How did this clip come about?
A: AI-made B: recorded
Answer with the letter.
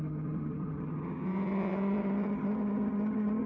A